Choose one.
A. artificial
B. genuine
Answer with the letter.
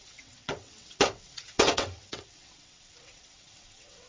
A